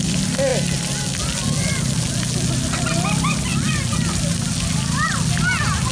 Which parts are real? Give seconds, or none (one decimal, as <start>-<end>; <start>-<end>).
0.0-5.9